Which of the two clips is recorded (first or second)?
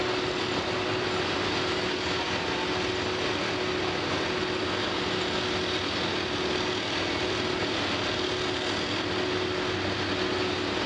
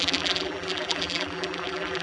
first